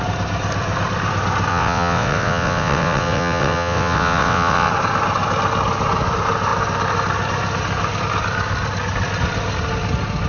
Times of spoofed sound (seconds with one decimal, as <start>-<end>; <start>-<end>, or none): 1.5-4.7